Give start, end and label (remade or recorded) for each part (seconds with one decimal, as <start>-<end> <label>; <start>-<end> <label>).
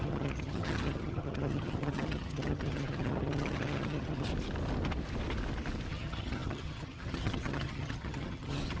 0.0-4.3 remade; 4.3-5.9 recorded; 5.9-8.8 remade